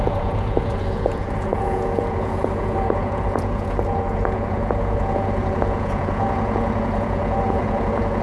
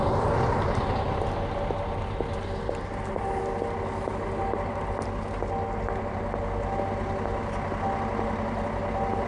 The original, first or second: second